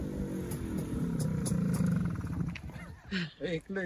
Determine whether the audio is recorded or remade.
recorded